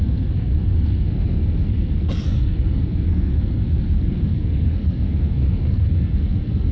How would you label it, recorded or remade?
remade